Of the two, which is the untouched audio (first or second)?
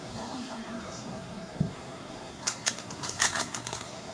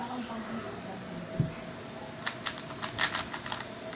second